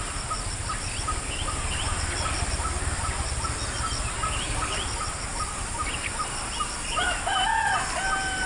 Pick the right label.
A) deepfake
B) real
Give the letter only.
B